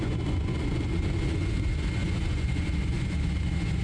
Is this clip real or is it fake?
fake